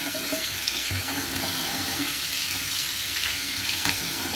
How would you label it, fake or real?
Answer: fake